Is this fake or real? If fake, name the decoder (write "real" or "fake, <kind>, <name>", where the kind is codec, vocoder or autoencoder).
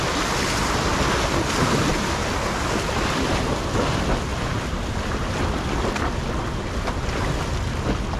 real